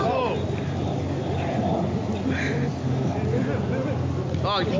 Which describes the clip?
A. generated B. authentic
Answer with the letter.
B